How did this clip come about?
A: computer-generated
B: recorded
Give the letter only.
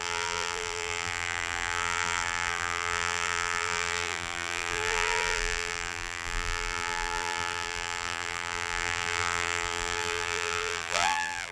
A